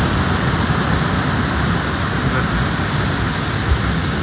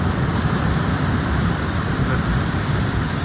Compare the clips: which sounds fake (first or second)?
second